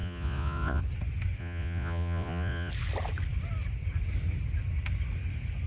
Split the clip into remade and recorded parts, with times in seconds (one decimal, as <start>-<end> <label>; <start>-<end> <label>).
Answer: 0.0-0.8 remade; 0.8-1.4 recorded; 1.4-2.7 remade; 2.7-5.7 recorded